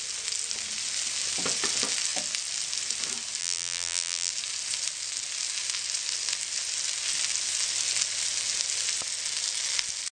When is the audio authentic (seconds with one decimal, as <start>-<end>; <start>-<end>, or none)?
0.0-3.4; 4.3-10.1